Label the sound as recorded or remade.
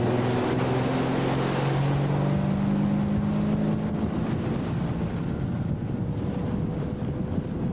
recorded